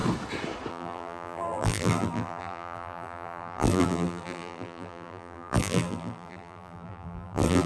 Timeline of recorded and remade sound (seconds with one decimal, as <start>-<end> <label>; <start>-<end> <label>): 0.0-0.7 recorded; 0.7-7.7 remade